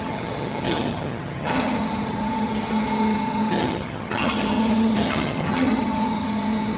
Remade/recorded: remade